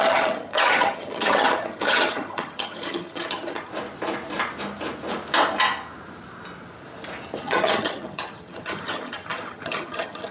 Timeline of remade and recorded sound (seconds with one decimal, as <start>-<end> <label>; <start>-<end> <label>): 0.0-3.7 remade; 3.7-7.4 recorded; 7.4-10.3 remade